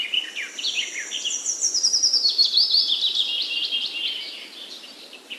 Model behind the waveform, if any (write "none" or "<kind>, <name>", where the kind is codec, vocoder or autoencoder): none